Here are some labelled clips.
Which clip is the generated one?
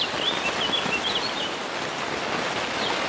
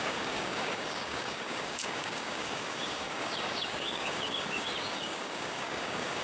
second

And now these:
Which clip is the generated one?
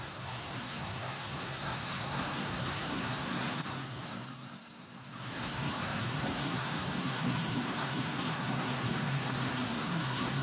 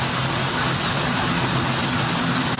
first